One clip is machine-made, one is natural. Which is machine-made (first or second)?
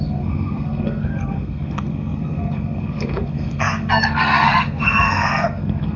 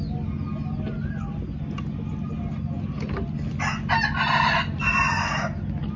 first